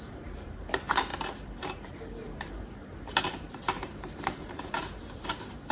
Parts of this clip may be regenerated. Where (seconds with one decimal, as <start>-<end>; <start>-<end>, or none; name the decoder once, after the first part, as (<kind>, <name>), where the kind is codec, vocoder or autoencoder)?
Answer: 0.0-5.7 (vocoder, BigVGAN v2)